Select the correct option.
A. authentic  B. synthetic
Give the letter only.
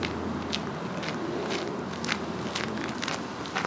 A